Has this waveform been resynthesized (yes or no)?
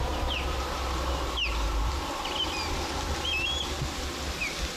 no